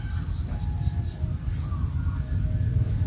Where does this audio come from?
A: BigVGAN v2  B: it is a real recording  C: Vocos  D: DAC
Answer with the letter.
B